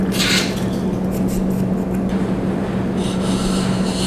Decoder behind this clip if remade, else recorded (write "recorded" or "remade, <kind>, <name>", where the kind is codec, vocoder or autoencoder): recorded